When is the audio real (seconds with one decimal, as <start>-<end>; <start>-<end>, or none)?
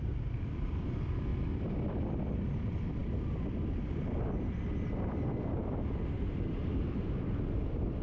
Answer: 1.3-2.3; 3.0-3.9